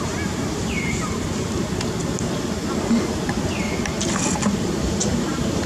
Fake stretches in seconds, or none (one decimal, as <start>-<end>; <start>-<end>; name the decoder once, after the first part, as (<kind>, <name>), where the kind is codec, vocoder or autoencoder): 0.0-2.0 (vocoder, BigVGAN v2); 5.1-5.7